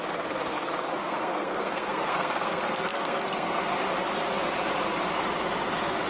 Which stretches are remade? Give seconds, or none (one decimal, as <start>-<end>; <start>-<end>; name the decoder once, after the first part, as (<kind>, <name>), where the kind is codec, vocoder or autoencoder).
1.0-3.6 (codec, SNAC)